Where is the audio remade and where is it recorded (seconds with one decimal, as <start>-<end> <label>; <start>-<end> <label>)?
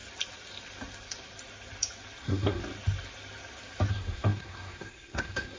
0.0-2.2 recorded; 2.2-2.6 remade; 2.6-3.9 recorded; 3.9-5.6 remade